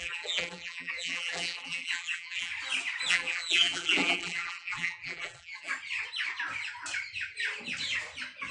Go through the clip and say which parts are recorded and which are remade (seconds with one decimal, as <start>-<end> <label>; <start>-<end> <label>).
0.0-2.5 remade; 2.5-3.1 recorded; 3.1-5.7 remade; 5.7-8.5 recorded